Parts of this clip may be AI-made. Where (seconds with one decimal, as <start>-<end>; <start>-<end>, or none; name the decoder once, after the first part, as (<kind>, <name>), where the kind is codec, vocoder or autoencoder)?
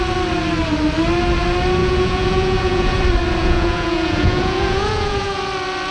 1.8-3.0 (vocoder, Vocos); 3.4-5.4